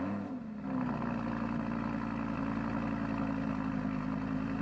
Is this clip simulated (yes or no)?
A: no